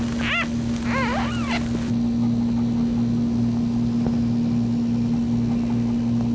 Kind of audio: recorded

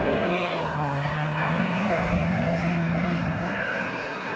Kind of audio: remade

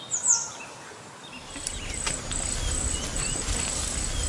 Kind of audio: recorded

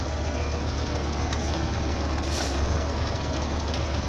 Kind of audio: remade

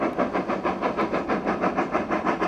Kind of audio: recorded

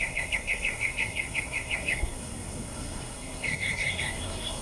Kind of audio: remade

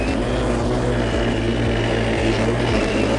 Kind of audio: recorded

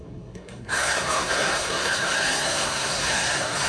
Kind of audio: remade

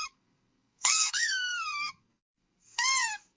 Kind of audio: remade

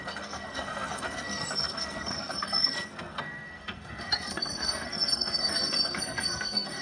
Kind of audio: remade